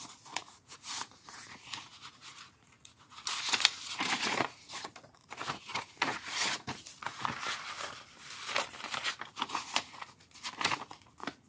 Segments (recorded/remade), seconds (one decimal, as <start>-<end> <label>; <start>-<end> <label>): 0.0-7.2 remade; 7.2-9.3 recorded; 9.3-11.5 remade